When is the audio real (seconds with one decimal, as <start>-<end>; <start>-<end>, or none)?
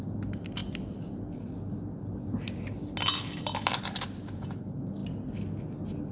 0.0-6.1